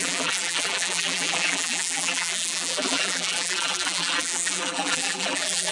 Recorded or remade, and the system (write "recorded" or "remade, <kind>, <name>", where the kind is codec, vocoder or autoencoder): remade, vocoder, BigVGAN v2